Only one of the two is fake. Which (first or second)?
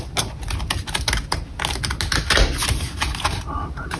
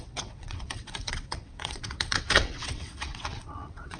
second